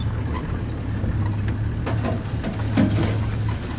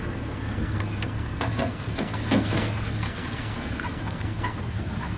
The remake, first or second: second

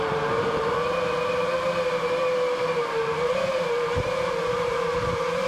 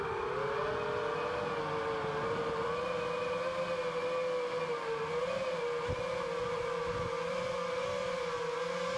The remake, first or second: first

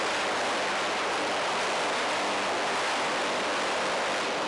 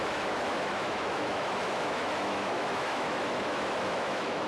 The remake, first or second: second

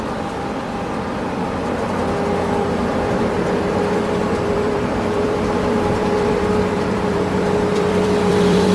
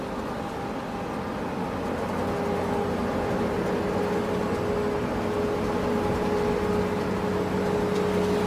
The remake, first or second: first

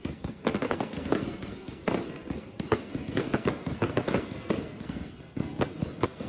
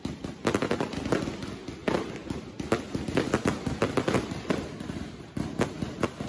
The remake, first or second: first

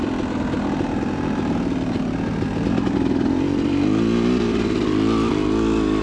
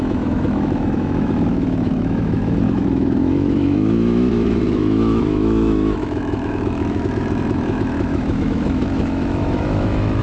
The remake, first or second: second